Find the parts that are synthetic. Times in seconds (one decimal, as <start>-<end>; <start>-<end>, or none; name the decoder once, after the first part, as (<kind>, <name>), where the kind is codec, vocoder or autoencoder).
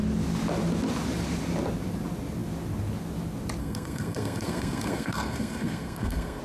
3.6-6.4 (codec, SNAC)